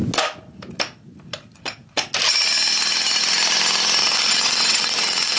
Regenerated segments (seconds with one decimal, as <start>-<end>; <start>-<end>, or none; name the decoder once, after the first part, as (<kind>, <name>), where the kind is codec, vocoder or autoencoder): 4.0-5.4 (vocoder, WaveNeXt)